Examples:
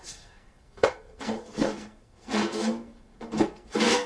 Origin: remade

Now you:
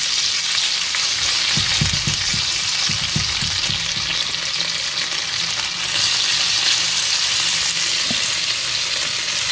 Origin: recorded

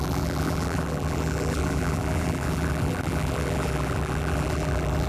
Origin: remade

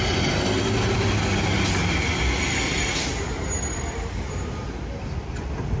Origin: recorded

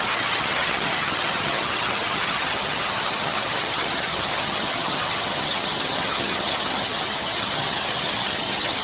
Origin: remade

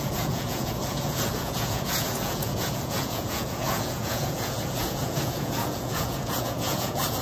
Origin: remade